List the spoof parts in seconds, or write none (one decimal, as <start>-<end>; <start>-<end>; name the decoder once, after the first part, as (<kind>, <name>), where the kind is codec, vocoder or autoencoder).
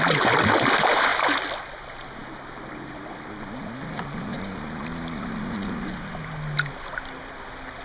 none